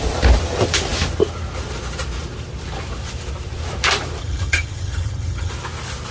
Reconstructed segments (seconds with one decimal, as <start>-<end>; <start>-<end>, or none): 4.2-5.5